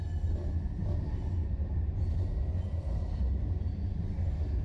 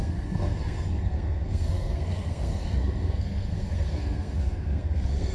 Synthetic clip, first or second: second